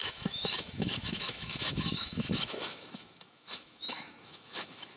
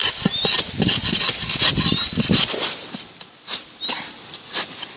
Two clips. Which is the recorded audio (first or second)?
second